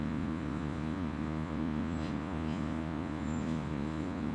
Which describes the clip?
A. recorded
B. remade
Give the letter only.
B